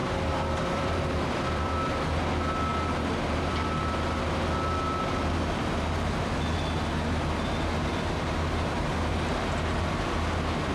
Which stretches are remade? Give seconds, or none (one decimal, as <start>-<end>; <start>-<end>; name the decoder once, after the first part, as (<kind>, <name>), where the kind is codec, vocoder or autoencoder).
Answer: 0.0-1.8 (vocoder, BigVGAN v2)